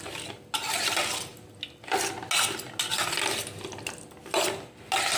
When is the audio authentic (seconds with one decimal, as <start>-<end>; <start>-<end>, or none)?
0.0-5.2